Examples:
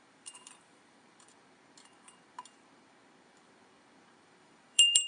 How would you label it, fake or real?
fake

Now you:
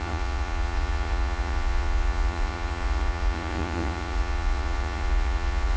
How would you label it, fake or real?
fake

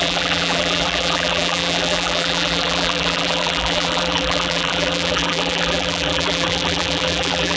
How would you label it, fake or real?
fake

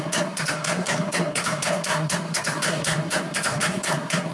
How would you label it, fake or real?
fake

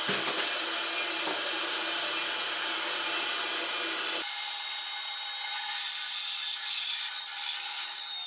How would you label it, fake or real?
real